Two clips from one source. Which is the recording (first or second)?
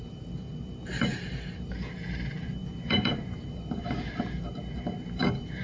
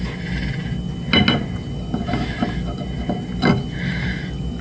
second